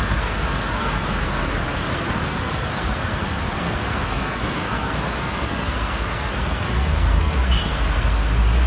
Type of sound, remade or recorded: remade